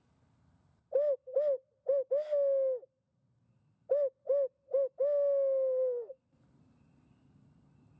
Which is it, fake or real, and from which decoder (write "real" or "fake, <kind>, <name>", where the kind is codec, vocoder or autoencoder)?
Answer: real